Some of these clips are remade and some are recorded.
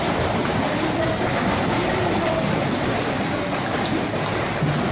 recorded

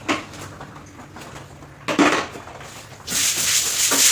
recorded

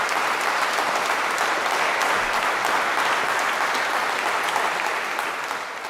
recorded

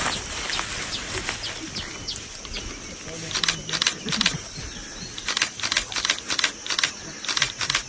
recorded